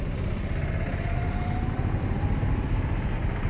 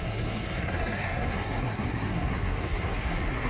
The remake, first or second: second